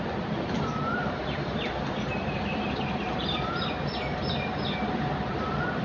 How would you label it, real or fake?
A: fake